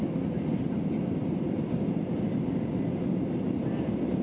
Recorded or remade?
remade